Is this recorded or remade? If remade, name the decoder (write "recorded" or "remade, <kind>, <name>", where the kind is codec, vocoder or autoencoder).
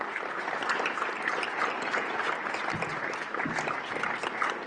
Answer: recorded